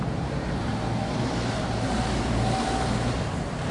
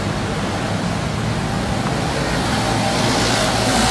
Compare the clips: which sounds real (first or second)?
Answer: second